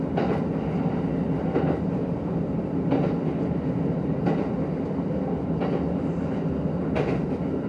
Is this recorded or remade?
recorded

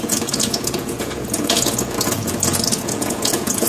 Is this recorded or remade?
remade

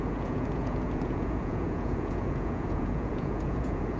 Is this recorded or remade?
remade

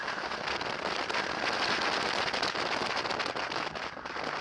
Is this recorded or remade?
recorded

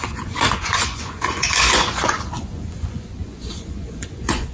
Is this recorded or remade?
remade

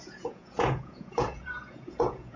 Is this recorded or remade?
remade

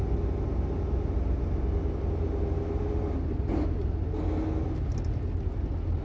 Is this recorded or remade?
recorded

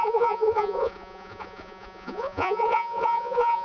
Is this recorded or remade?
remade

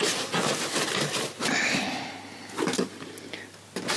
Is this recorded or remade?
recorded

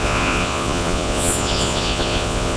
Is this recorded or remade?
remade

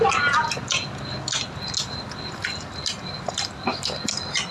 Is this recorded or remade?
recorded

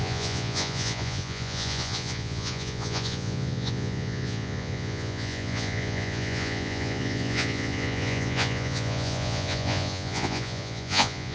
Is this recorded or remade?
remade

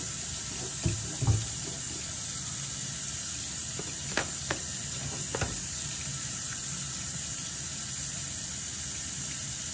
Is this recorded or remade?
recorded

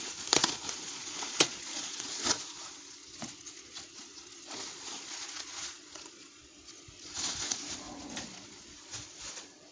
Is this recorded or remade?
remade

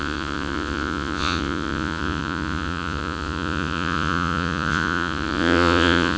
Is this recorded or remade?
remade